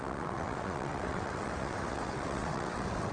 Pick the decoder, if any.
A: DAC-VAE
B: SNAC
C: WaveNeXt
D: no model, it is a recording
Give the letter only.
C